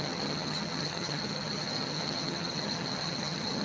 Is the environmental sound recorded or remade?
remade